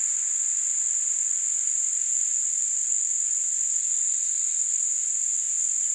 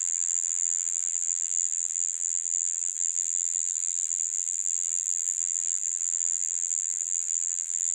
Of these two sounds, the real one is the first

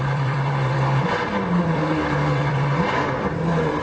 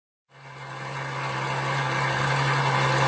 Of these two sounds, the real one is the second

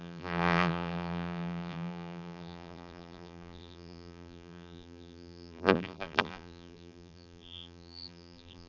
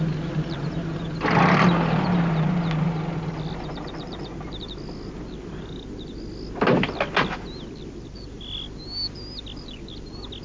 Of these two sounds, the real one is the second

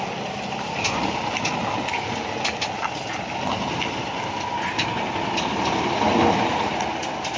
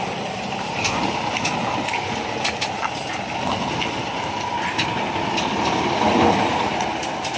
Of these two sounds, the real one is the first